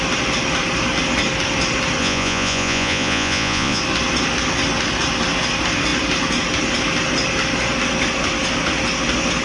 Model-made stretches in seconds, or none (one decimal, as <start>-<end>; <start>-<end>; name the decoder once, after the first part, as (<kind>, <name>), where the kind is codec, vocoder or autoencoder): 2.0-3.8 (vocoder, Vocos)